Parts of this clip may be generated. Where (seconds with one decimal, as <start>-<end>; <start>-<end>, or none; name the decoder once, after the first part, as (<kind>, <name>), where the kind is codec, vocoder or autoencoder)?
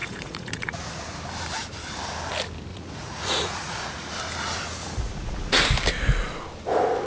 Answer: 0.0-1.0 (vocoder, Vocos); 2.7-4.1; 4.8-5.6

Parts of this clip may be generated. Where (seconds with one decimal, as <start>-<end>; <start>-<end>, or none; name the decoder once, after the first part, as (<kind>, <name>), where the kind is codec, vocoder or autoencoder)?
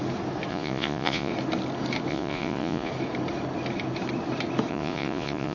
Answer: 0.5-1.3 (vocoder, Vocos); 2.1-2.9; 4.7-5.5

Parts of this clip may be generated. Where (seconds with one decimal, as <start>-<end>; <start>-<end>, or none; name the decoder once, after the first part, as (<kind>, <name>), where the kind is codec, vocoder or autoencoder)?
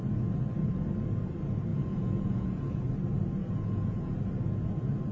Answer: 1.7-2.8 (vocoder, Vocos); 3.4-4.2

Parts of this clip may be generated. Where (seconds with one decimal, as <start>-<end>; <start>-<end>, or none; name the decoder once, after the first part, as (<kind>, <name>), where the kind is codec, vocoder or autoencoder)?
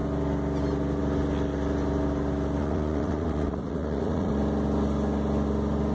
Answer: 2.6-4.3 (vocoder, Vocos)